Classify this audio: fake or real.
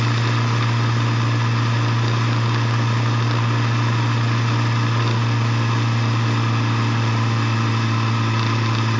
real